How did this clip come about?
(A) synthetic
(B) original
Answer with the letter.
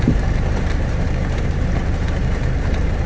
A